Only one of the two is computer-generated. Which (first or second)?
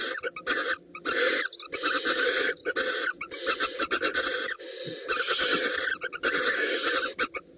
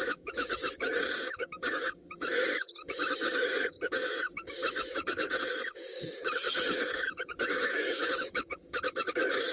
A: second